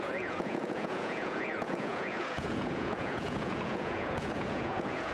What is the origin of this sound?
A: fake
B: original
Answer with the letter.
A